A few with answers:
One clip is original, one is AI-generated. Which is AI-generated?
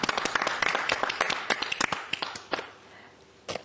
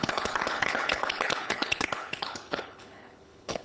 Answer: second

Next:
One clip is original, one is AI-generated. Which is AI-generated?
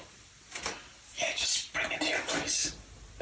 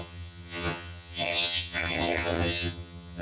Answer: second